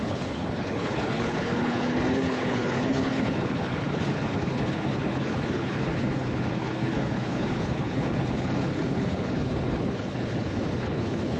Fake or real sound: fake